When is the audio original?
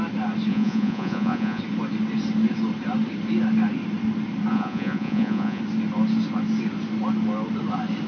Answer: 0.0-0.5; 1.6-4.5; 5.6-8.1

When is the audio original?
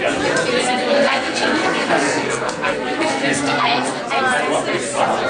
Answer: 0.0-0.8; 4.0-5.3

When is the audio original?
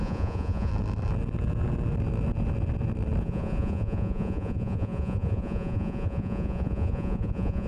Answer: 0.7-3.2